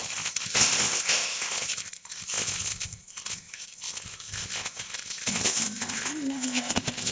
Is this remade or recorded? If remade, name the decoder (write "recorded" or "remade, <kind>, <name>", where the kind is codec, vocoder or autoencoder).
remade, codec, ZipCodec